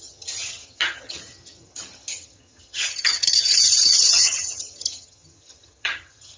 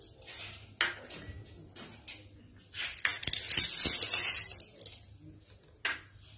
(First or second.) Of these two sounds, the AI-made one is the first